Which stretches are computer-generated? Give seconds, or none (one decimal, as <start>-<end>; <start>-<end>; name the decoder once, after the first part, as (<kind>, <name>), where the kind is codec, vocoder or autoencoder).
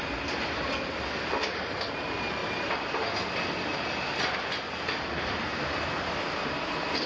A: none